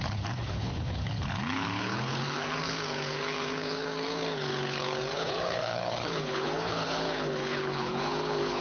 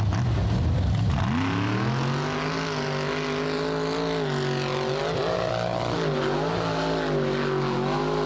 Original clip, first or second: second